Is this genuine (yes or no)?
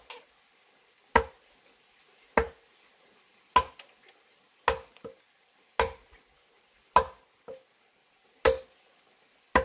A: yes